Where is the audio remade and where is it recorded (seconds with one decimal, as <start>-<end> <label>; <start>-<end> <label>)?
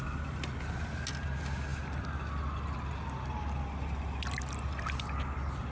0.0-5.7 recorded